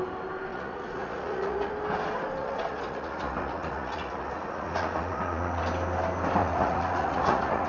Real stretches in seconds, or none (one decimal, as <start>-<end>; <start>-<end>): 0.0-0.5; 1.7-2.4; 5.6-6.4